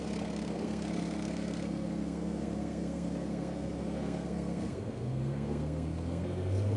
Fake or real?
fake